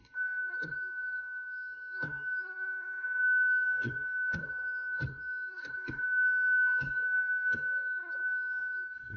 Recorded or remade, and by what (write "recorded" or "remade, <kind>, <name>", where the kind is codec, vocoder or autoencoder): remade, codec, SNAC